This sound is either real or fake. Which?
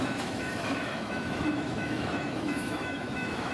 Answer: fake